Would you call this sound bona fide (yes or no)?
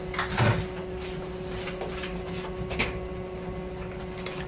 yes